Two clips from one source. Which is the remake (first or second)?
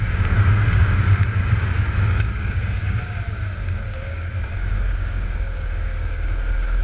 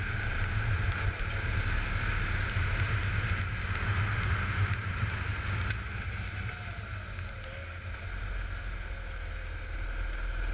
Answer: first